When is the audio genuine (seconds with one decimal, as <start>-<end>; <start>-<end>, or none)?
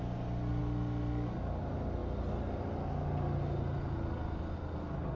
0.0-5.2